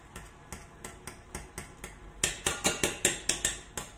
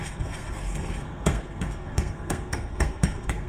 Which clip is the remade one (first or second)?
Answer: second